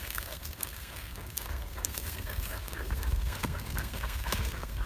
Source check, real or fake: fake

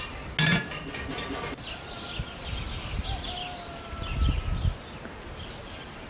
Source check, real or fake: real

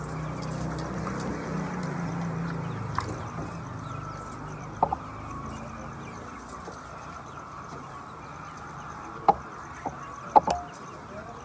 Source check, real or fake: real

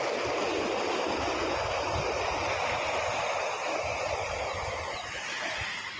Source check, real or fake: real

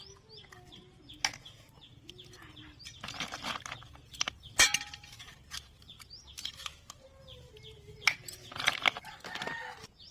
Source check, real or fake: real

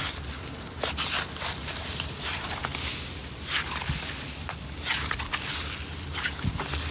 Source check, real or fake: real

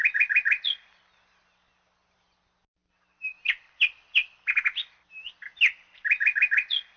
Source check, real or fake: real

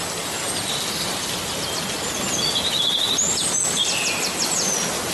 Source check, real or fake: real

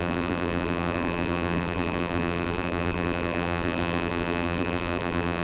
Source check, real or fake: fake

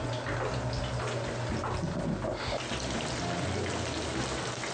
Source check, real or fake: real